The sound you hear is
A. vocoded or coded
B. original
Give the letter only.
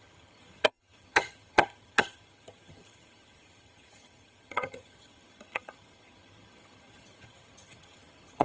A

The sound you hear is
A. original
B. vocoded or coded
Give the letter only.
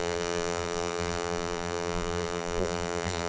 B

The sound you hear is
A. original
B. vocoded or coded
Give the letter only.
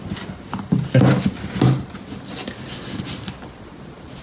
A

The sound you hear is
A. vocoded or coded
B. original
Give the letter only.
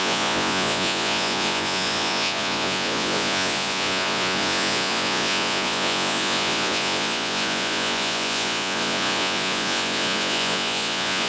A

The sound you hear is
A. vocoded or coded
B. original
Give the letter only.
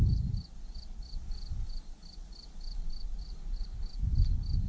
B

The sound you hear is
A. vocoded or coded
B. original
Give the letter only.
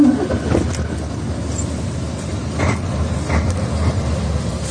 B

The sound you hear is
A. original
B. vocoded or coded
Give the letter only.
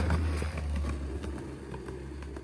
A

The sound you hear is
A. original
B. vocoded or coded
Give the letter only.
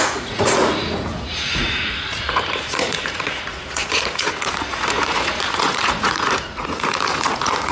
B